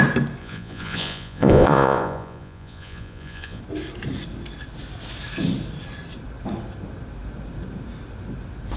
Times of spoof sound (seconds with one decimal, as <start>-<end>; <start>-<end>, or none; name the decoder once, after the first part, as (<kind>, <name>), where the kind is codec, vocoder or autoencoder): 0.4-3.6 (vocoder, Vocos)